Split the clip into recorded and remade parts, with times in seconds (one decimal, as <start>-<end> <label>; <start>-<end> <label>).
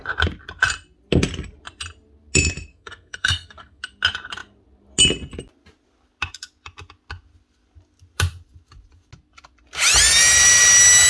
0.0-2.7 recorded; 2.7-3.8 remade; 3.8-11.1 recorded